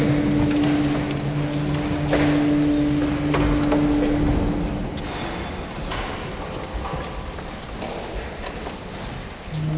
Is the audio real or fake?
real